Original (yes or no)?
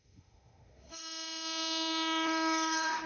no